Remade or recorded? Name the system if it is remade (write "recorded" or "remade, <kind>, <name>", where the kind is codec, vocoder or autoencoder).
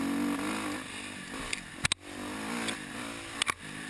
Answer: recorded